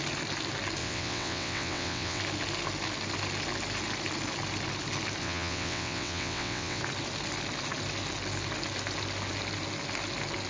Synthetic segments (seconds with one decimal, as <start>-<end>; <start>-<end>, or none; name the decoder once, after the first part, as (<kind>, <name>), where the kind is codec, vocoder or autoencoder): 0.8-2.2 (vocoder, WaveNeXt); 5.2-6.8